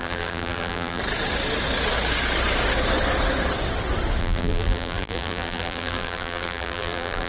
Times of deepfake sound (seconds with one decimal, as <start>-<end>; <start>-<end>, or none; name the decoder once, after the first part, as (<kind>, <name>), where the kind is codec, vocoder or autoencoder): 0.0-1.0 (vocoder, BigVGAN v2); 4.2-7.3